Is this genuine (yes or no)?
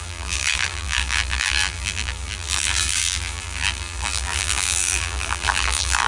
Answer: no